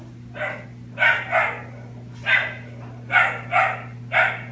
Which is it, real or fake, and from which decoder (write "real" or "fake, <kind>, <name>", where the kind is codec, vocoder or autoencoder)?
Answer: real